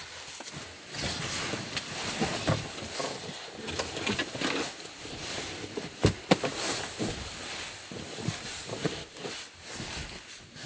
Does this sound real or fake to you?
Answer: real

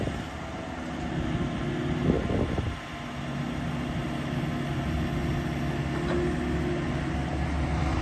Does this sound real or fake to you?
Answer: real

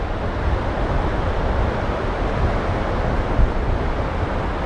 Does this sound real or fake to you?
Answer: real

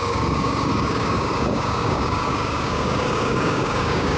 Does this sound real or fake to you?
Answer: fake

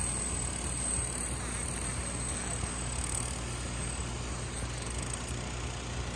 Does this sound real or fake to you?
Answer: real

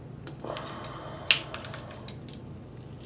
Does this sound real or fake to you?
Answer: real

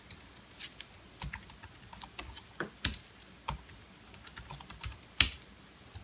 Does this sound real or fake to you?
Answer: real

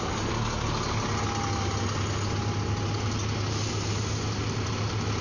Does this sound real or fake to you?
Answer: real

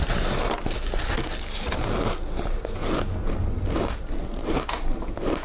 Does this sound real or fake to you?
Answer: real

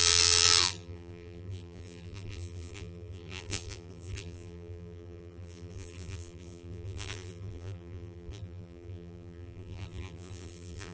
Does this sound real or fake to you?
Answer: fake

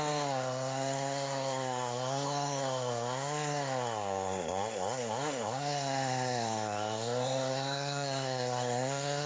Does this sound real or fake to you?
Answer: fake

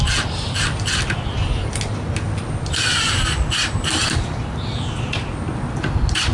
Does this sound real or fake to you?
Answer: real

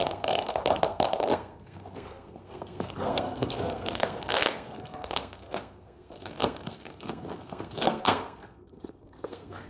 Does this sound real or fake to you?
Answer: fake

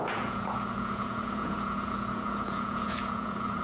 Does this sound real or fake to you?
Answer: fake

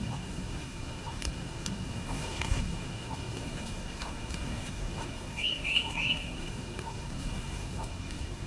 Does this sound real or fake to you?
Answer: fake